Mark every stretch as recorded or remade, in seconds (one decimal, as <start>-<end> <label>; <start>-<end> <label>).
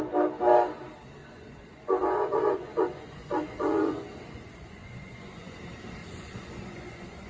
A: 0.0-1.2 recorded; 1.2-5.6 remade; 5.6-6.0 recorded; 6.0-7.3 remade